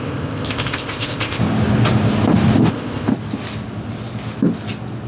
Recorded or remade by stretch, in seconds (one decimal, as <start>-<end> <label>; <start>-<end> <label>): 0.0-1.4 remade; 1.4-2.7 recorded; 2.7-3.1 remade; 3.1-5.1 recorded